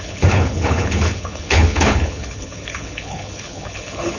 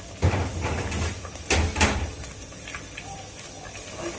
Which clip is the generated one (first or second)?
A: first